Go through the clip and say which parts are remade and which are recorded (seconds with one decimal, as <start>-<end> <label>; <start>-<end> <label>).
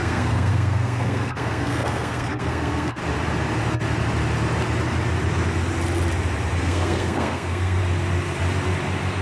0.0-3.0 remade; 3.0-6.6 recorded; 6.6-7.8 remade; 7.8-9.2 recorded